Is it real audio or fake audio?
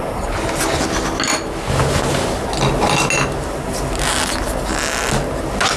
real